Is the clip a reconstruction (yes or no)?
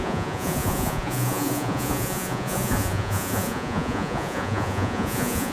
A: yes